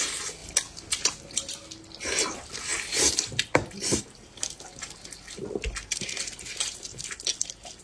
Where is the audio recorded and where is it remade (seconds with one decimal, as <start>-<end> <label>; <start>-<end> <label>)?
0.0-7.8 recorded